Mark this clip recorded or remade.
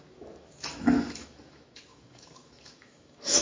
remade